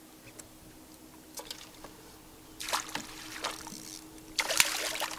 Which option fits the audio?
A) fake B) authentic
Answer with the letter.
B